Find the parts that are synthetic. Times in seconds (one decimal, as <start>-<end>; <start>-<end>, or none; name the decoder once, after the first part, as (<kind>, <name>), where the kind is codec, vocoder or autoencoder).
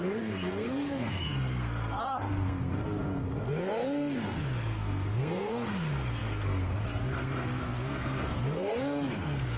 0.0-9.6 (codec, SNAC)